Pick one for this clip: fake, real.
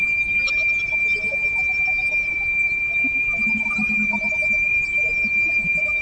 real